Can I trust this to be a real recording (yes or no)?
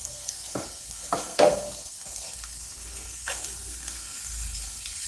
no